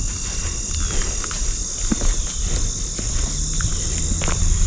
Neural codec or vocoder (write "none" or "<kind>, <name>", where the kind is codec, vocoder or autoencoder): none